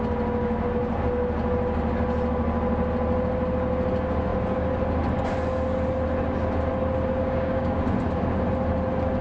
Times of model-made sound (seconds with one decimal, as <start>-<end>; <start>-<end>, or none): 7.2-7.8